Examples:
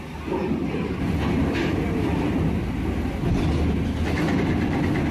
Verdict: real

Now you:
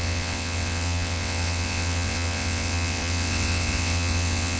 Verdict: fake